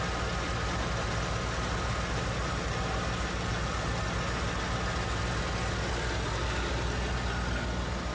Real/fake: real